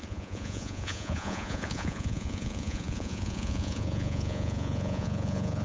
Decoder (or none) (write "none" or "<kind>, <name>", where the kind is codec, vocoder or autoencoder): vocoder, Vocos